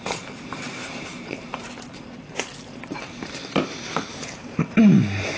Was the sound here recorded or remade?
remade